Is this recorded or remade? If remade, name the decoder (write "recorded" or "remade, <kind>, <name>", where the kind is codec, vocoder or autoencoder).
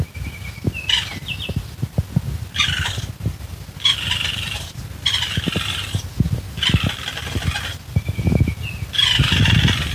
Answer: recorded